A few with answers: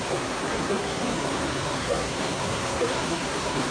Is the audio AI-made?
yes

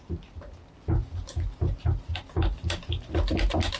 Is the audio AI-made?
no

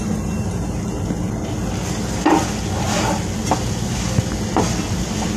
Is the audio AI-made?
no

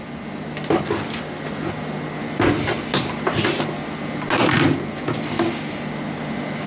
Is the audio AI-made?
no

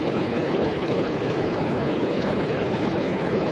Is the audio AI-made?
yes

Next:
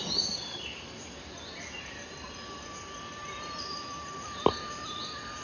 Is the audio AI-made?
no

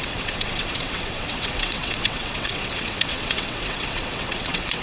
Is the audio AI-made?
yes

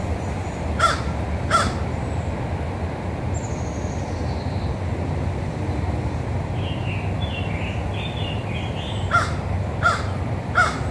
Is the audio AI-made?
no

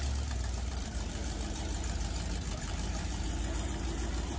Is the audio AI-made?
yes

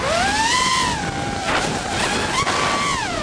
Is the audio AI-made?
no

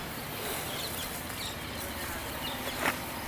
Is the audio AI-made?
no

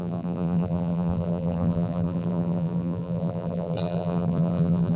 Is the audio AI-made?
yes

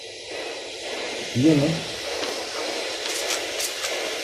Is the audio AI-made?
no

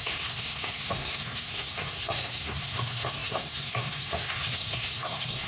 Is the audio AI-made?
yes